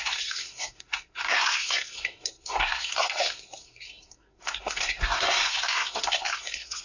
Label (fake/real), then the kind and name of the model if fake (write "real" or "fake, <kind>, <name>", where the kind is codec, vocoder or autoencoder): fake, codec, SNAC